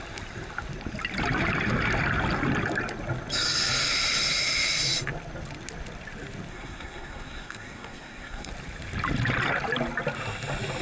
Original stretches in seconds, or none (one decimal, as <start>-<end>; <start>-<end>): 0.0-6.5; 8.5-10.8